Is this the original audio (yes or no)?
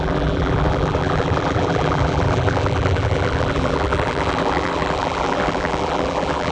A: no